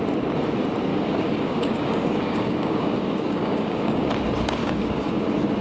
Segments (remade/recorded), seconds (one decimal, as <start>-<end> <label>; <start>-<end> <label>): 0.0-0.9 recorded; 0.9-4.1 remade; 4.1-4.6 recorded; 4.6-5.1 remade; 5.1-5.6 recorded